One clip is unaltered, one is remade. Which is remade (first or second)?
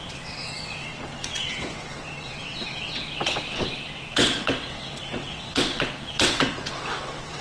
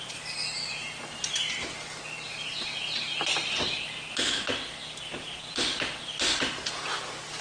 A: first